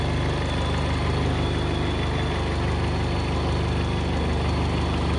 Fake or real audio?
real